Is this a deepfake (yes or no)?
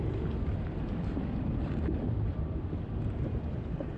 yes